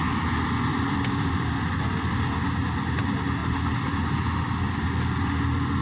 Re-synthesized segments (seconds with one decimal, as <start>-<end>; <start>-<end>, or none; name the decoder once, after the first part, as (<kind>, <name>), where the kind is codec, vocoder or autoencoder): 0.7-1.9 (vocoder, BigVGAN v2)